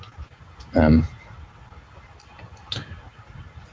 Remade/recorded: recorded